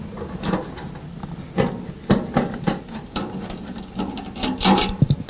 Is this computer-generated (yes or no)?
no